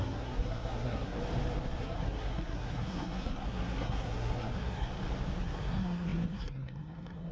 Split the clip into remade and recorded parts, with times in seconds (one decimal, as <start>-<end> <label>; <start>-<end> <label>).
0.0-1.2 remade; 1.2-1.8 recorded; 1.8-4.9 remade; 4.9-5.4 recorded; 5.4-7.3 remade